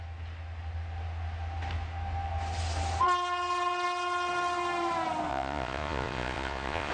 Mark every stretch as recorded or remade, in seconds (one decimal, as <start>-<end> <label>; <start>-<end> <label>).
0.0-5.3 recorded; 5.3-6.9 remade